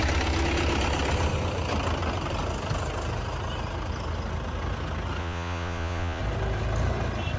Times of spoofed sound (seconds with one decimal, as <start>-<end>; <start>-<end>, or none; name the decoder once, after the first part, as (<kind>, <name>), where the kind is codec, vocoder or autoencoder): 5.2-6.2 (vocoder, Vocos)